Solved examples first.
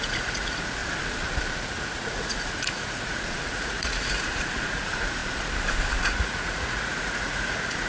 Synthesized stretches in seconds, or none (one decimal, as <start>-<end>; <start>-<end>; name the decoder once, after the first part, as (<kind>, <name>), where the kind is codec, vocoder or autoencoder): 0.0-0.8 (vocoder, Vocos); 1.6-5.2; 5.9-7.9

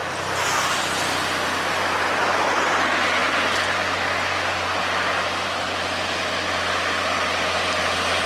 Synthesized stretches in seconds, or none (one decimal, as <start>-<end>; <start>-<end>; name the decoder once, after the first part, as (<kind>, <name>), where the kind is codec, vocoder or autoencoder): none

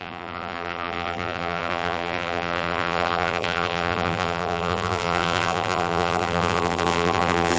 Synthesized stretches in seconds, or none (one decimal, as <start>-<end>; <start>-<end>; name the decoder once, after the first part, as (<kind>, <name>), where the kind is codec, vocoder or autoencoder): 0.0-7.6 (vocoder, BigVGAN v2)

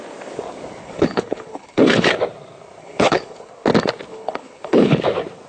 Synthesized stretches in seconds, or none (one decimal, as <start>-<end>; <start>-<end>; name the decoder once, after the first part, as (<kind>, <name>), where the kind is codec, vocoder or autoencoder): 0.8-2.1 (codec, HILCodec); 2.8-3.5; 4.1-5.0

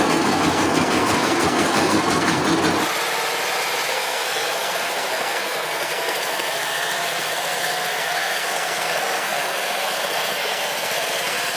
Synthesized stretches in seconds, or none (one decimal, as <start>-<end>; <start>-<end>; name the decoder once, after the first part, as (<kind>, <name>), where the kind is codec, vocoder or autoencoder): 0.0-2.4 (codec, SNAC); 3.9-11.6